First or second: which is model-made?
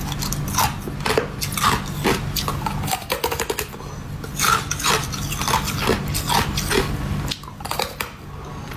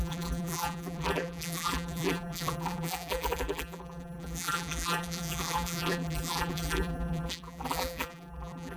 second